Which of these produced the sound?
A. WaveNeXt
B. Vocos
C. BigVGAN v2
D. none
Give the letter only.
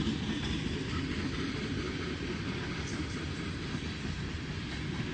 D